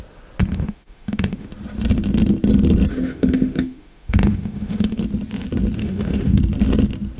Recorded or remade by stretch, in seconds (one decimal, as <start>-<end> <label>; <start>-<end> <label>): 0.0-0.5 recorded; 0.5-1.5 remade; 1.5-2.9 recorded; 2.9-5.0 remade; 5.0-5.8 recorded; 5.8-6.4 remade; 6.4-7.2 recorded